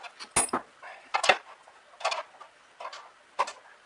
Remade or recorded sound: recorded